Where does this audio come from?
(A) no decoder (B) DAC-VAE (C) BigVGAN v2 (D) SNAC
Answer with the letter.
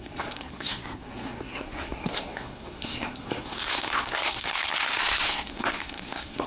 D